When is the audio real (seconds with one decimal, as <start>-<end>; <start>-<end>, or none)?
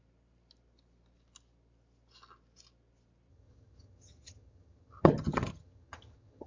0.0-3.3